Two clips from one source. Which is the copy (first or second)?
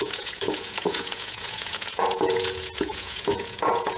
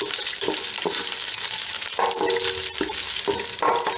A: first